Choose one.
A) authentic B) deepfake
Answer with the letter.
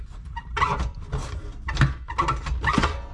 A